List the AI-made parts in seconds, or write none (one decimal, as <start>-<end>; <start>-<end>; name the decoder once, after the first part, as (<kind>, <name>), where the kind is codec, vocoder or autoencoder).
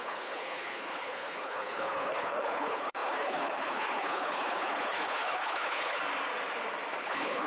0.0-6.0 (codec, HILCodec); 7.0-7.5